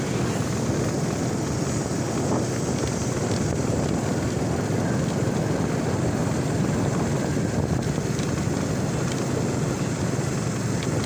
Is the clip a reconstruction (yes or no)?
no